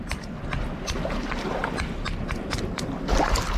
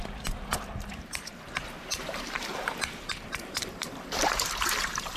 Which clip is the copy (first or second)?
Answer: second